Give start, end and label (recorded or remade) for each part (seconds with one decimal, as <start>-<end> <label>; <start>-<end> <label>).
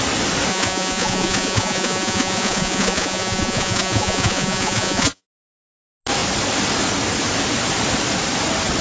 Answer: 0.0-0.5 recorded; 0.5-5.2 remade; 5.2-8.8 recorded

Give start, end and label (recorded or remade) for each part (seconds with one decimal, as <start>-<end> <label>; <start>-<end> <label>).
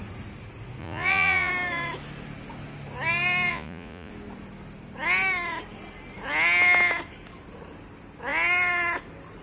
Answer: 0.0-0.8 recorded; 0.8-1.5 remade; 1.5-3.5 recorded; 3.5-4.1 remade; 4.1-9.4 recorded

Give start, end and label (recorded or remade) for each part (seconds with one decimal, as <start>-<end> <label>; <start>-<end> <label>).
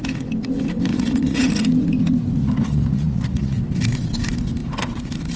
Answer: 0.0-0.9 recorded; 0.9-1.5 remade; 1.5-2.4 recorded; 2.4-3.6 remade; 3.6-5.4 recorded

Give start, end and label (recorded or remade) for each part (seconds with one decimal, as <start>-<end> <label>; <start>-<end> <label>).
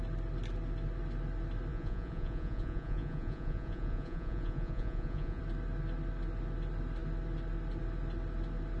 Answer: 0.0-1.7 recorded; 1.7-5.4 remade; 5.4-8.8 recorded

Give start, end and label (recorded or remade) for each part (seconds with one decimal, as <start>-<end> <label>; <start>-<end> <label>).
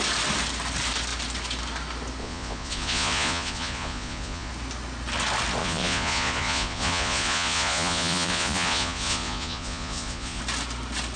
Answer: 0.0-2.2 recorded; 2.2-4.5 remade; 4.5-5.6 recorded; 5.6-10.4 remade; 10.4-11.2 recorded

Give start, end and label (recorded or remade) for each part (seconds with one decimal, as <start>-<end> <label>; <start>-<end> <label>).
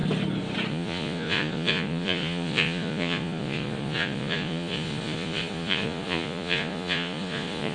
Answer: 0.0-0.7 recorded; 0.7-7.7 remade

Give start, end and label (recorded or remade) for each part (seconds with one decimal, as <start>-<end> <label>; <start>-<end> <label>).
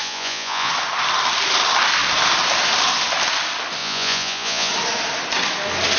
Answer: 0.0-0.7 remade; 0.7-3.8 recorded; 3.8-4.7 remade; 4.7-6.0 recorded